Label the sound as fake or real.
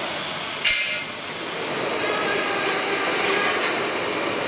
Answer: real